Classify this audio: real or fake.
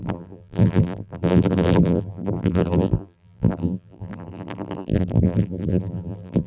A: fake